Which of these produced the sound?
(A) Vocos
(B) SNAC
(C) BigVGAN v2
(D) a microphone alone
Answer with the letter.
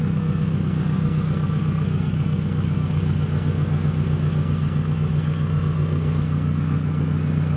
B